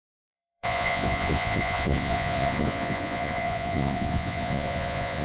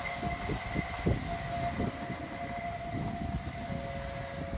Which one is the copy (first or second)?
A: first